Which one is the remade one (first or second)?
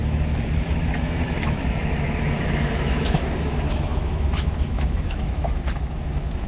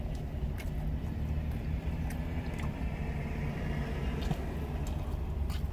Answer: first